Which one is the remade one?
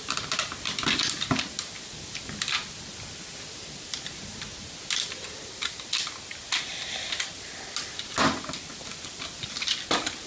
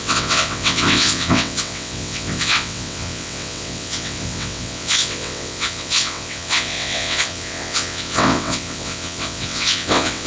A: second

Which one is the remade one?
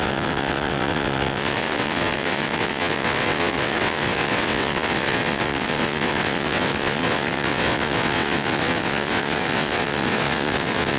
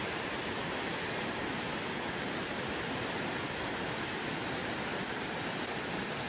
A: first